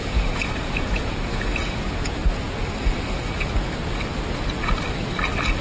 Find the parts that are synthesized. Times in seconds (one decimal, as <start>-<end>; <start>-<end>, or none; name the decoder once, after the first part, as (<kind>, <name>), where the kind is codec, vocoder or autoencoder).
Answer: 0.0-2.2 (vocoder, Vocos)